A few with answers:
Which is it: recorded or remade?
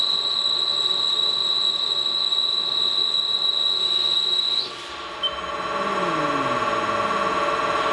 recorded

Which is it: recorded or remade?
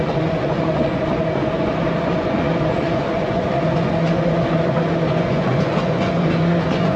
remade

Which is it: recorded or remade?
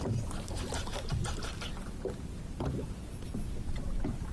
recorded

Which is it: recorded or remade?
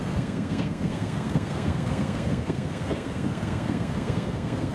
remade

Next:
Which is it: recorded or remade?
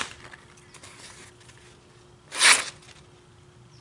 recorded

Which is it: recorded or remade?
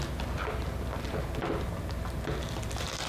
recorded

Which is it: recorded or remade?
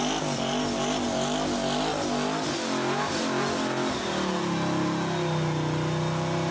recorded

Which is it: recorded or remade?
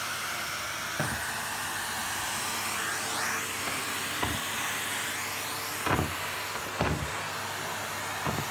recorded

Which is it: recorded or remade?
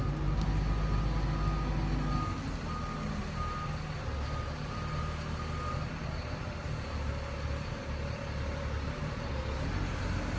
recorded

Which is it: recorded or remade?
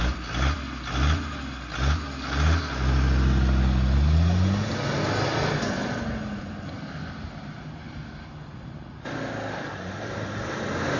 recorded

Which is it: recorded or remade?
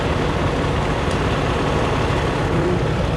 recorded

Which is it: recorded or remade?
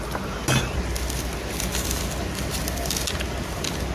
recorded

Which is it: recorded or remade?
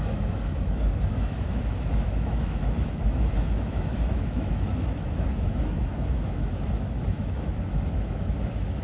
remade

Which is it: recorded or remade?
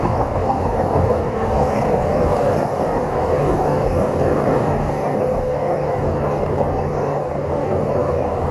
remade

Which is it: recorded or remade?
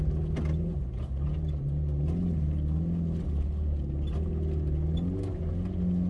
recorded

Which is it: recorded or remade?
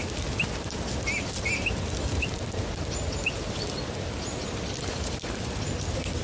recorded